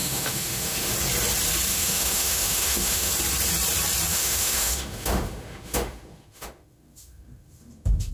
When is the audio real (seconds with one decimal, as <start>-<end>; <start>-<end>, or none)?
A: 0.9-1.7; 3.1-4.1